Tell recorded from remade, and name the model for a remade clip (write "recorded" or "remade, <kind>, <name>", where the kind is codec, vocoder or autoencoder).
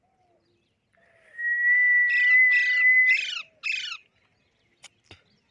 recorded